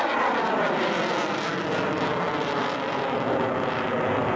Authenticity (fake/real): real